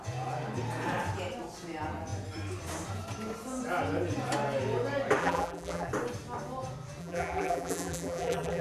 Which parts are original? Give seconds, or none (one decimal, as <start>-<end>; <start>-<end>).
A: 0.0-5.2; 5.9-7.0